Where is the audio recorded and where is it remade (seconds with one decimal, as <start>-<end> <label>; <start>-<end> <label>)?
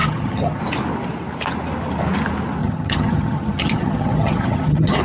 0.0-0.6 remade; 0.6-2.6 recorded; 2.6-5.0 remade